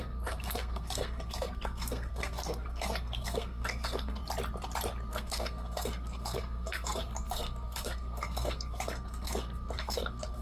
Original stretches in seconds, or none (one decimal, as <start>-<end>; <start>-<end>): 4.2-5.1